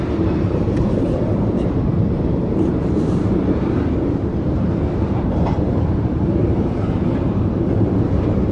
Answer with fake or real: fake